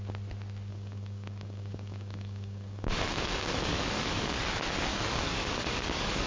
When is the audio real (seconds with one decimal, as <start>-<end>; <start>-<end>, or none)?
0.0-0.7; 4.4-4.9